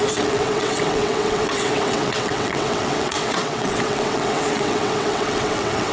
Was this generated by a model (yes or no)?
yes